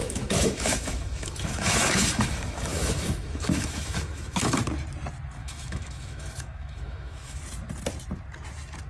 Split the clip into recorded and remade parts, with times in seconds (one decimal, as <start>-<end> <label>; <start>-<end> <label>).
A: 0.0-4.6 remade; 4.6-5.4 recorded; 5.4-7.4 remade; 7.4-8.9 recorded